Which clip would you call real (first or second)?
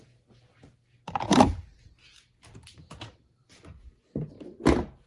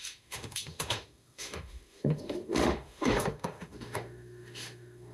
first